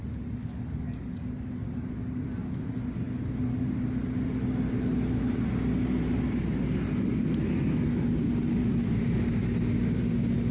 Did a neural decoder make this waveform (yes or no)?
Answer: no